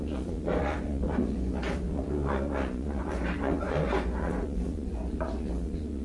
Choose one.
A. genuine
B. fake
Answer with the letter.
B